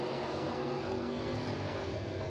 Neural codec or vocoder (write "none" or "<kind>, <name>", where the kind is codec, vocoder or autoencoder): codec, SNAC